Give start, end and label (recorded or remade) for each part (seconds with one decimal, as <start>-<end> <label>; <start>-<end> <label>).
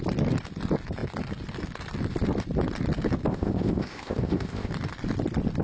0.0-3.3 recorded; 3.3-4.7 remade; 4.7-5.6 recorded